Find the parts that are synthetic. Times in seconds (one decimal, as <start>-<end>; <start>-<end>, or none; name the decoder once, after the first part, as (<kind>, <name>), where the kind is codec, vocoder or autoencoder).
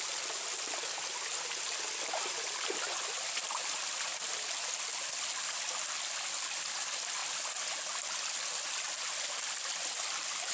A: none